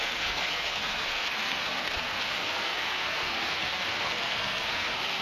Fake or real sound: fake